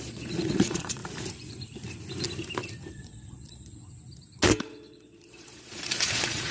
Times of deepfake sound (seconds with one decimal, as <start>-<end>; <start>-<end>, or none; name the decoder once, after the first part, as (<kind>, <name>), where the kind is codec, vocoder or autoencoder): 0.0-1.0 (vocoder, Vocos); 2.9-3.8; 4.6-6.5